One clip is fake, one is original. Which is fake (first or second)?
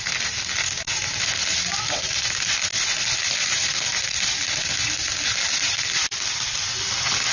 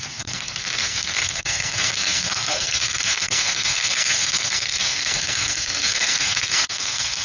second